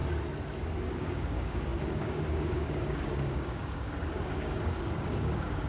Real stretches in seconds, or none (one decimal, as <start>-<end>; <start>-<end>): 0.0-0.9